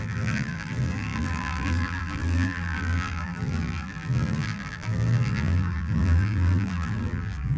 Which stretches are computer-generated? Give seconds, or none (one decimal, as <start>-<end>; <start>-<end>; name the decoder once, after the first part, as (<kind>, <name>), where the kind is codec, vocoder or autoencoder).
0.0-7.6 (vocoder, BigVGAN v2)